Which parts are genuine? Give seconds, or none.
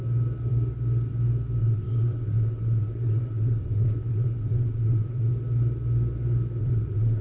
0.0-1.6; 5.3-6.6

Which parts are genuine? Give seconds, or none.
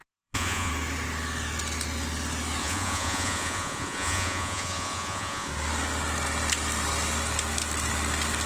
0.7-2.6; 5.5-8.5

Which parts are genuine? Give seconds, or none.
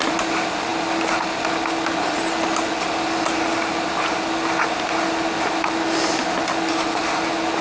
0.0-7.6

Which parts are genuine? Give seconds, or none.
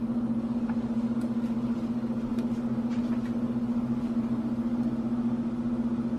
0.0-6.2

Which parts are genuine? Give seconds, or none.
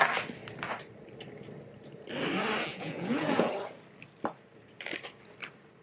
0.0-2.7; 3.5-5.8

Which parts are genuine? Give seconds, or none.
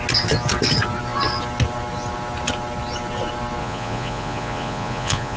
0.0-3.6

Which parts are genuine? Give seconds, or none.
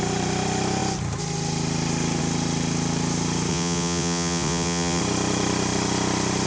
0.0-3.5; 5.0-6.5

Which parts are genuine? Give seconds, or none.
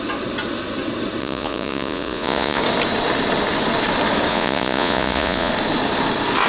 0.0-1.2; 2.6-4.3; 5.5-6.5